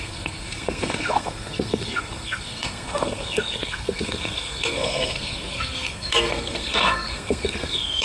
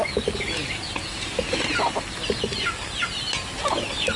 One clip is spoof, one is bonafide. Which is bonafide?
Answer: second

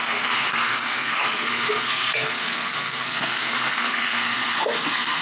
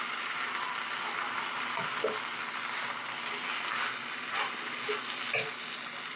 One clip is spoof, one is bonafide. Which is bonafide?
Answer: second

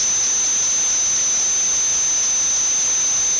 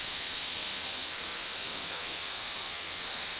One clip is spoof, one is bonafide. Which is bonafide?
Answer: first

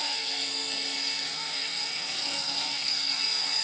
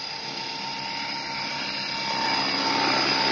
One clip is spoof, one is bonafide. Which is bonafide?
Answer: second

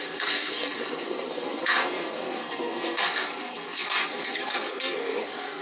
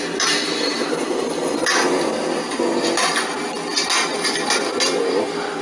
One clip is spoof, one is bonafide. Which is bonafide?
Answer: second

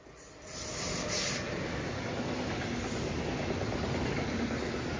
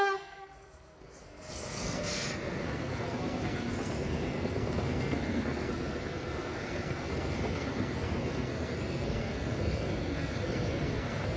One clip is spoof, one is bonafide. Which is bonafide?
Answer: first